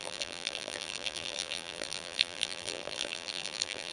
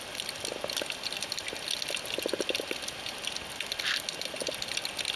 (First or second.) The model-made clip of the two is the first